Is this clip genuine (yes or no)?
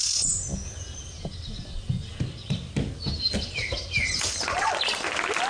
yes